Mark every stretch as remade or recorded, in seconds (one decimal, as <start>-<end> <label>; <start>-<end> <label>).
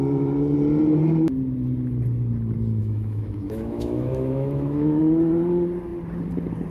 0.0-2.8 recorded; 2.8-5.0 remade; 5.0-6.7 recorded